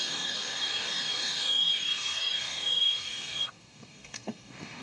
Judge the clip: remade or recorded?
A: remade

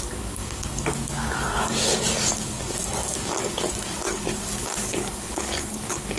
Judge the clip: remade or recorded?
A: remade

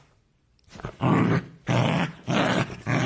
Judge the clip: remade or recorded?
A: remade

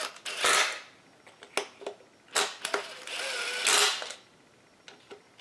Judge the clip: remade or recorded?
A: recorded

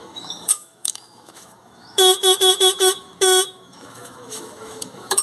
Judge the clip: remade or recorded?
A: remade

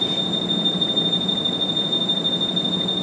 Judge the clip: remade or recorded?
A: remade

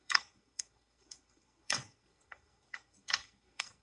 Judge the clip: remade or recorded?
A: remade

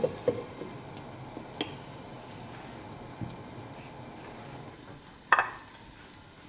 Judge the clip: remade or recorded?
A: recorded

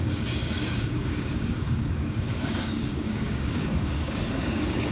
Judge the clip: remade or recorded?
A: remade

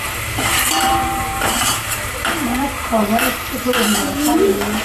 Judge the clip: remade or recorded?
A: remade